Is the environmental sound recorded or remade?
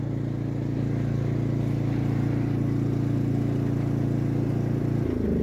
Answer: recorded